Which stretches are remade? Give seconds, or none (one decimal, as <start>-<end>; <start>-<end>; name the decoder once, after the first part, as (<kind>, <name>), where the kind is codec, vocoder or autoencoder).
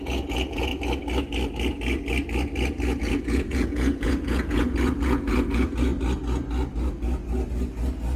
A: 0.0-0.7 (vocoder, Vocos); 3.0-5.9